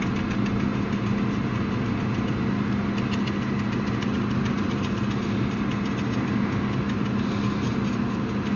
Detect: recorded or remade recorded